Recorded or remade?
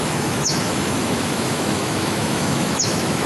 remade